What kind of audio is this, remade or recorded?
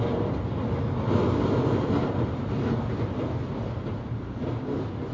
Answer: recorded